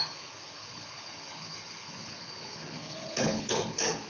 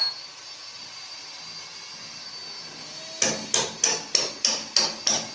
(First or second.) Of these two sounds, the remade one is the first